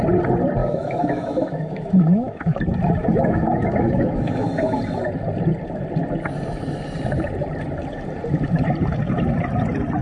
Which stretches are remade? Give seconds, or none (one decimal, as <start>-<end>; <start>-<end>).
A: 0.6-2.6; 3.0-4.8